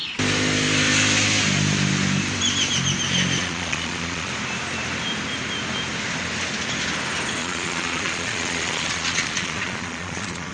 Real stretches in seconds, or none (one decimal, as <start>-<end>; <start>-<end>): 0.0-3.4; 4.3-7.4